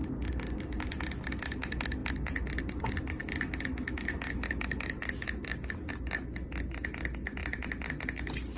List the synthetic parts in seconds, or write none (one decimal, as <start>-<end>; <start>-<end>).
none

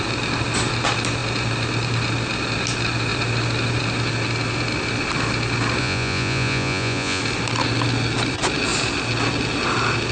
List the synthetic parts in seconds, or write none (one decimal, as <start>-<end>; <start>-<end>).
5.8-7.2

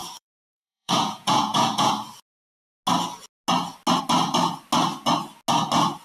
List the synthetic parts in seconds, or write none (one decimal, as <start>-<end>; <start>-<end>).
0.0-1.9

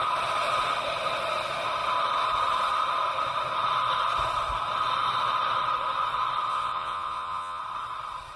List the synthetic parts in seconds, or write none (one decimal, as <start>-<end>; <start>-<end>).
6.5-7.6

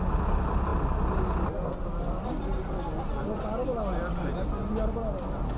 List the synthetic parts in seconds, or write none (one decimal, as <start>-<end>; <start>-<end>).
none

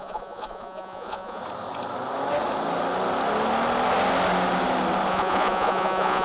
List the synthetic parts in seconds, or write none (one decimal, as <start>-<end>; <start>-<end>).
0.0-1.4; 5.1-6.2

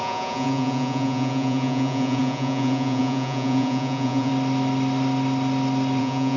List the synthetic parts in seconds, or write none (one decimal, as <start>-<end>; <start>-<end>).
0.0-4.3; 6.0-6.4